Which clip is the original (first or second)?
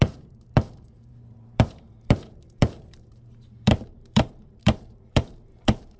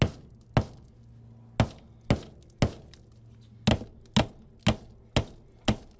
second